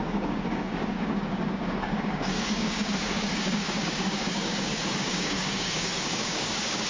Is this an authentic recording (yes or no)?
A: no